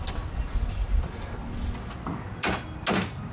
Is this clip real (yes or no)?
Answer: yes